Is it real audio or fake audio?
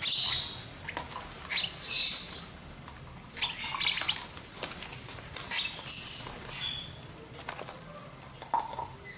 real